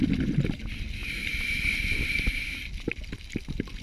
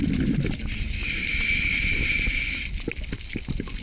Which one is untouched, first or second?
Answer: second